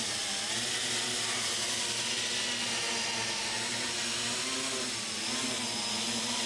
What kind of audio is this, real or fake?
real